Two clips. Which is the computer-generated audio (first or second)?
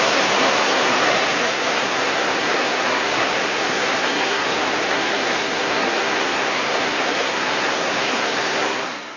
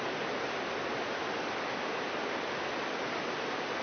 first